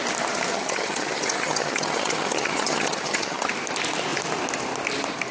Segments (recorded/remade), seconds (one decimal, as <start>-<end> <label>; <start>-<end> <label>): 0.0-0.5 recorded; 0.5-3.5 remade; 3.5-5.3 recorded